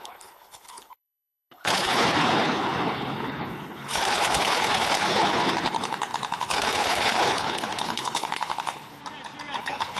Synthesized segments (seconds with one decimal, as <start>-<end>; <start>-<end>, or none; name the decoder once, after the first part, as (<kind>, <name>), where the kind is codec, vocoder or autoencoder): 0.0-9.0 (codec, HILCodec); 9.6-10.0